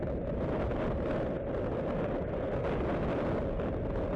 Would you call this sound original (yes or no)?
yes